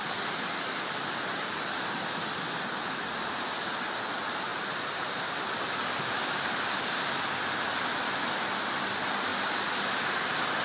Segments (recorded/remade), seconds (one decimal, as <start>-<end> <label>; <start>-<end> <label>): 0.0-4.5 recorded; 4.5-5.7 remade; 5.7-10.6 recorded